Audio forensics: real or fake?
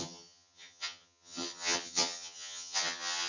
fake